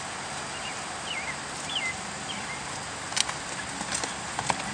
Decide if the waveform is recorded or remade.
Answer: recorded